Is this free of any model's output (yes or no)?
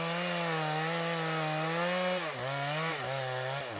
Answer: yes